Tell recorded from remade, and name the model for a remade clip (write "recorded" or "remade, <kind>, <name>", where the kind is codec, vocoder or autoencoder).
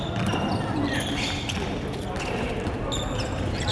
recorded